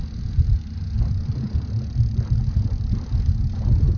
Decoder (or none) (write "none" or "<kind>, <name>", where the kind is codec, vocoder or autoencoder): none